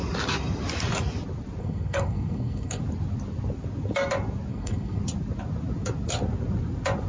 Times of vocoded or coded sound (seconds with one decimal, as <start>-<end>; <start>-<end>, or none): 1.6-2.8; 4.5-5.0